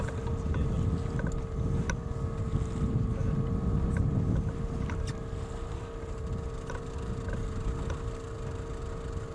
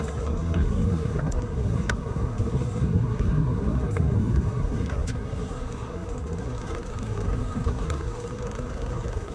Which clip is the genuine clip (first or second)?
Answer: first